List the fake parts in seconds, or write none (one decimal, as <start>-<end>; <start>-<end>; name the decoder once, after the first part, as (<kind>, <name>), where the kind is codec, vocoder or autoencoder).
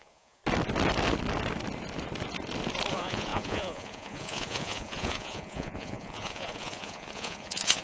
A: 0.0-0.4 (vocoder, Vocos); 2.9-7.8